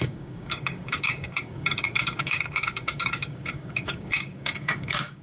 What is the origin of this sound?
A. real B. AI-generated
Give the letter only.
B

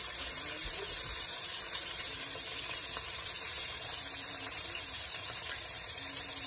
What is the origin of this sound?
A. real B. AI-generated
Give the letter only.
B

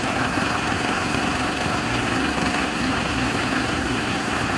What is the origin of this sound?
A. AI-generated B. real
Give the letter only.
A